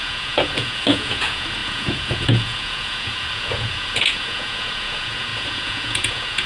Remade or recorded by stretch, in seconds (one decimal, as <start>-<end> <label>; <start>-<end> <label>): 0.0-6.5 remade